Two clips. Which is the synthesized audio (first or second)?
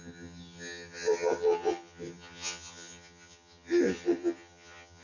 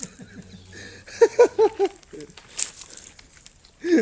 first